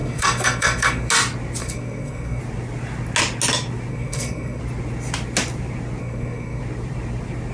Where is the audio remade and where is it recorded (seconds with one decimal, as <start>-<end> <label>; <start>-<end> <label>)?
0.0-1.1 remade; 1.1-1.6 recorded; 1.6-2.4 remade; 2.4-3.9 recorded; 3.9-4.6 remade; 4.6-6.0 recorded; 6.0-6.6 remade; 6.6-7.5 recorded